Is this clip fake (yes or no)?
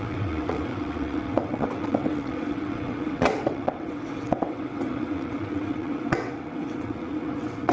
yes